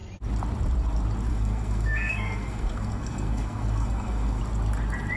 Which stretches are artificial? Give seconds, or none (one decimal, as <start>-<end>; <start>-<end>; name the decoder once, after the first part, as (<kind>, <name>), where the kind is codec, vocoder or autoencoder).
1.3-4.4 (codec, SNAC)